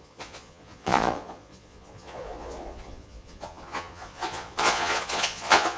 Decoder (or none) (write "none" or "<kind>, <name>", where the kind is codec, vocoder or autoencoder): vocoder, Vocos